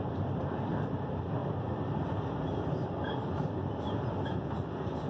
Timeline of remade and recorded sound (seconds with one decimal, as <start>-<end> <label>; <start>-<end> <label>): 0.0-5.1 remade